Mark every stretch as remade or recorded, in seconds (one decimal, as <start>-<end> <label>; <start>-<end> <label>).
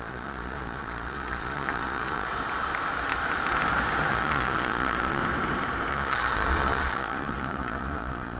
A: 0.0-2.3 remade; 2.3-4.1 recorded; 4.1-5.2 remade; 5.2-5.9 recorded; 5.9-8.4 remade